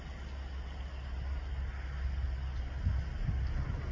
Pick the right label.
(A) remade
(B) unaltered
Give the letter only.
B